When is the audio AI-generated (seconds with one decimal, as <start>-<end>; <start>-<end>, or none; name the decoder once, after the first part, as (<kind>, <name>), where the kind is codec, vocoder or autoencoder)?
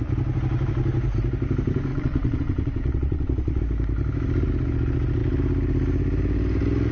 1.9-3.6 (vocoder, WaveNeXt)